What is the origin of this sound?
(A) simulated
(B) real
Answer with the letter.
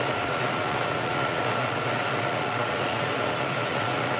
A